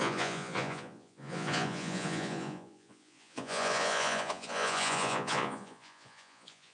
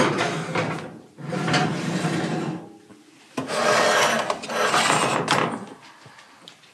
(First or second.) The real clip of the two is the second